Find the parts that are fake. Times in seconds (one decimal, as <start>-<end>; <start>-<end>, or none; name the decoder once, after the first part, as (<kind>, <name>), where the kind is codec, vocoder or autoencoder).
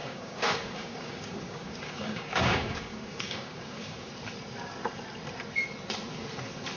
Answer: 0.0-4.1 (codec, DAC)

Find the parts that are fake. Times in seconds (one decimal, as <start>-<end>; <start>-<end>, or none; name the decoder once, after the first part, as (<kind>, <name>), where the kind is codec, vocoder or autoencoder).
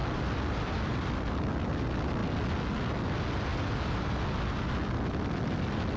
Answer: none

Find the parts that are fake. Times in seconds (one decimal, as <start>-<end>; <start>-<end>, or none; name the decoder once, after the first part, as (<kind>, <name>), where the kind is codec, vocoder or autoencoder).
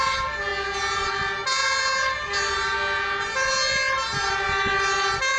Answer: none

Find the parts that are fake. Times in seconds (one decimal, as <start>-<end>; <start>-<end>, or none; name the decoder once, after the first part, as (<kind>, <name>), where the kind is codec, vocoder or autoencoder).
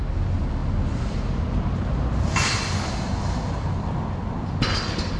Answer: none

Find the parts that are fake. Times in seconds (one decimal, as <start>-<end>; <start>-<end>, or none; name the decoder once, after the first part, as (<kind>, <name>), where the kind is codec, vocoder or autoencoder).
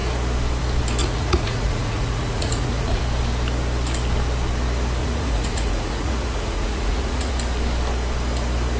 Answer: 1.0-3.0 (vocoder, Vocos); 5.0-7.3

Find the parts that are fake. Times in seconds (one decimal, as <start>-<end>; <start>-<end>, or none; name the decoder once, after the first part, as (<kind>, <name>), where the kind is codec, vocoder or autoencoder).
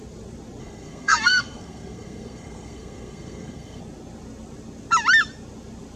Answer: 0.6-3.8 (codec, SNAC)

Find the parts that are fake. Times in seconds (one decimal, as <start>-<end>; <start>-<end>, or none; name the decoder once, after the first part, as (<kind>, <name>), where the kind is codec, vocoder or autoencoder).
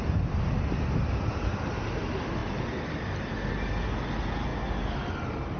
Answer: none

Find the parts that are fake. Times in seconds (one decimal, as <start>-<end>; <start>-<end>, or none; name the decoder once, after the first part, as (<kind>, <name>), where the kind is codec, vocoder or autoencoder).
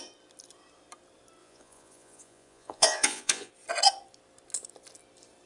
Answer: 1.4-3.5 (vocoder, Vocos)